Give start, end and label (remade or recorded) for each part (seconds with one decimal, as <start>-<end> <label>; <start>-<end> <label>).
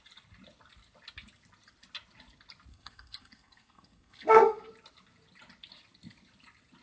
0.0-2.7 recorded; 2.7-4.7 remade; 4.7-6.8 recorded